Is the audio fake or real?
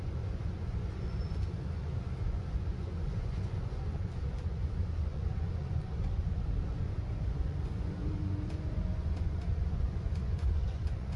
fake